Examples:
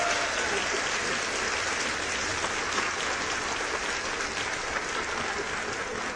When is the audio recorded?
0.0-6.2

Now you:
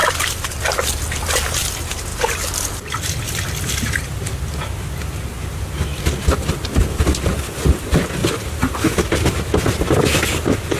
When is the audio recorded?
0.0-8.2; 9.2-10.8